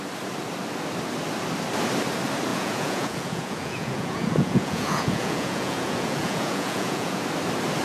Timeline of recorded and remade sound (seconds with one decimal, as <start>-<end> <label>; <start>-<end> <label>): 0.0-2.5 recorded; 2.5-7.2 remade; 7.2-7.8 recorded